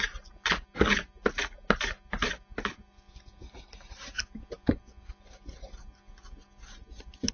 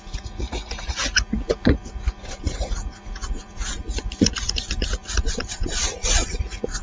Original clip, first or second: first